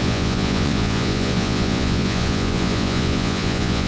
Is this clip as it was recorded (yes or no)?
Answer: no